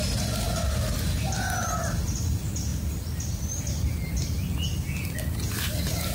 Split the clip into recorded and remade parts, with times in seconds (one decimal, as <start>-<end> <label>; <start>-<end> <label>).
0.0-6.1 recorded